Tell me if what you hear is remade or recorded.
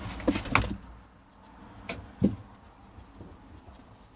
recorded